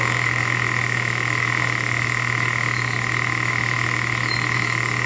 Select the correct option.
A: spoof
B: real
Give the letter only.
A